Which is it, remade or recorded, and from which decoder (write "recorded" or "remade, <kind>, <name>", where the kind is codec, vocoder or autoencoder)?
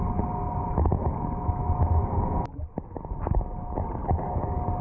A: recorded